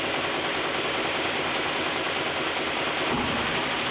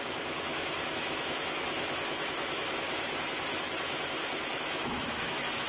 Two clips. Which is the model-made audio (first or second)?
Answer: second